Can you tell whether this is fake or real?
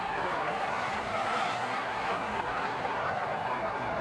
fake